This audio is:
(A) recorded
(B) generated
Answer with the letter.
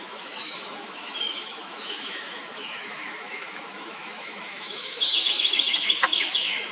B